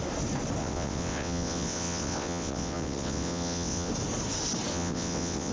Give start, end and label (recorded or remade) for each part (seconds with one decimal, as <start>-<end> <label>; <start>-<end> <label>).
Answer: 0.0-0.6 recorded; 0.6-3.9 remade; 3.9-4.7 recorded; 4.7-5.5 remade